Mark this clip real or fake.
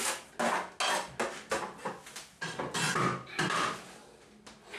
real